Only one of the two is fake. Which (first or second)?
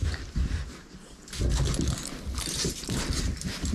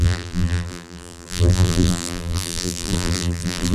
second